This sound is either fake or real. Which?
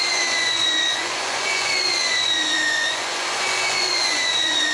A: fake